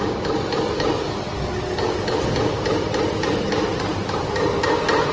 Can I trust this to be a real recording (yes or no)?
yes